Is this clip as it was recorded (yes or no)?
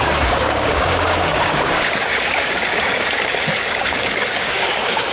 no